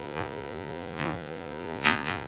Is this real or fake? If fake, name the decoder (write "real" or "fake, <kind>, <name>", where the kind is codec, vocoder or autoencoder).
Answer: fake, vocoder, Vocos